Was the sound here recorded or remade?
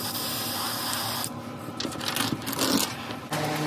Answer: recorded